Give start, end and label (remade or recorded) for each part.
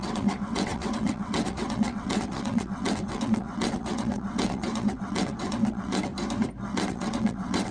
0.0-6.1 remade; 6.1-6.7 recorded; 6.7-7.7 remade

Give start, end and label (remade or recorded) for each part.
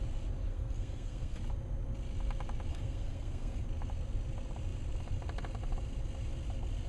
0.0-0.5 recorded; 0.5-1.4 remade; 1.4-2.7 recorded; 2.7-3.6 remade; 3.6-6.9 recorded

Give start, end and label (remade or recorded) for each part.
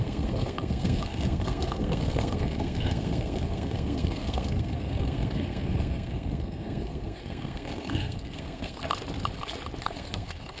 0.0-8.8 remade; 8.8-9.8 recorded; 9.8-10.6 remade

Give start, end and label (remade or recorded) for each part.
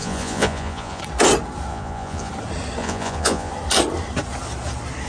0.0-1.0 remade; 1.0-1.7 recorded; 1.7-2.3 remade; 2.3-2.8 recorded; 2.8-3.5 remade; 3.5-5.1 recorded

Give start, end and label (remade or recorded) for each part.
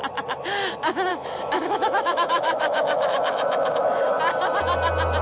0.0-1.1 recorded; 1.1-4.2 remade; 4.2-5.2 recorded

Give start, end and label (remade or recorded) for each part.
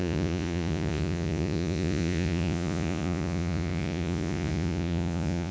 0.0-5.5 remade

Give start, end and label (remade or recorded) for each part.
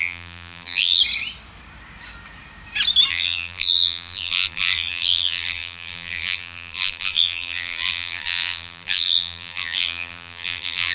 0.0-1.0 remade; 1.0-3.1 recorded; 3.1-10.9 remade